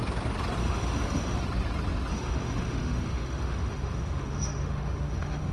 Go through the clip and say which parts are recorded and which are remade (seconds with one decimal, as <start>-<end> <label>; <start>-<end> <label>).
0.0-0.6 recorded; 0.6-1.4 remade; 1.4-2.1 recorded; 2.1-5.5 remade

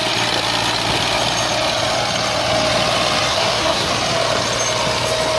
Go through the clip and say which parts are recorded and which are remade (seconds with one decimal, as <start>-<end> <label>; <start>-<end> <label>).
0.0-3.3 recorded; 3.3-3.9 remade; 3.9-5.4 recorded

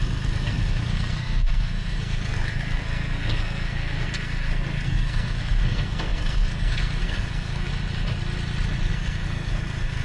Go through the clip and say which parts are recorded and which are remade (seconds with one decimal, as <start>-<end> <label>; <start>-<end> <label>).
0.0-7.7 remade; 7.7-8.9 recorded; 8.9-10.0 remade

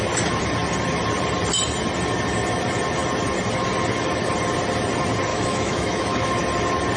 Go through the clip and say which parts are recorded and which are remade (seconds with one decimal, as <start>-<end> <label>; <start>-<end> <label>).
0.0-5.3 recorded; 5.3-6.3 remade; 6.3-7.0 recorded

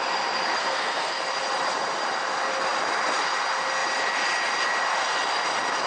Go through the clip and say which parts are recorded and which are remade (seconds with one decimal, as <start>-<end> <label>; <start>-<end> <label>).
0.0-0.6 recorded; 0.6-1.2 remade; 1.2-5.9 recorded

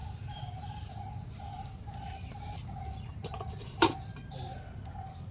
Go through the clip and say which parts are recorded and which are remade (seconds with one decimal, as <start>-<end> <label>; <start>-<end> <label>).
0.0-5.3 recorded